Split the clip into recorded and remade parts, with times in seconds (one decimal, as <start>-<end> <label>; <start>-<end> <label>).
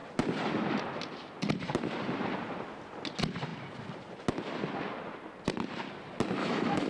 0.0-6.4 recorded; 6.4-6.9 remade